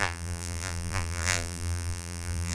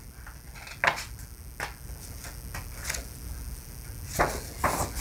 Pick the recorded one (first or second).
second